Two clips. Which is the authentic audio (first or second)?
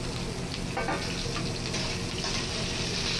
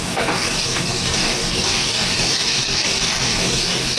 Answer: first